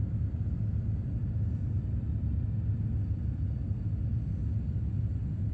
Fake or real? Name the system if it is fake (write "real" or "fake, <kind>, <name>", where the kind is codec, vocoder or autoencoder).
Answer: real